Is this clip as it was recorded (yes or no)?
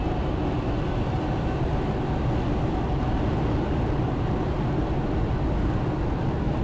yes